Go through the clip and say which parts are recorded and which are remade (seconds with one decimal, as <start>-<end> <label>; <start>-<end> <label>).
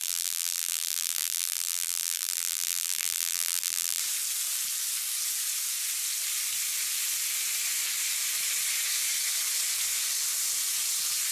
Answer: 0.0-4.0 remade; 4.0-11.3 recorded